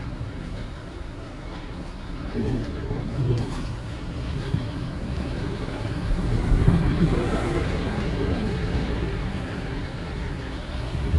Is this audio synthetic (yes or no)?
yes